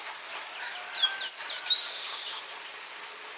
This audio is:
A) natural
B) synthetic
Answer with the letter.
A